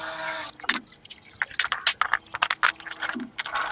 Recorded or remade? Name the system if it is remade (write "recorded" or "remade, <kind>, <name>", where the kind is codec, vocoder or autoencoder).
recorded